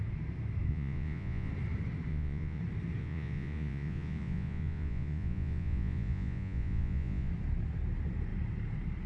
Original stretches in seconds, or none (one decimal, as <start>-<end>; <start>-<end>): 0.0-0.7; 1.5-2.1; 2.6-3.0; 7.3-9.1